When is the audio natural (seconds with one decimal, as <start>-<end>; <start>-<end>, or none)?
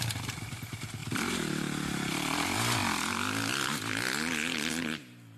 0.0-1.0; 1.6-5.4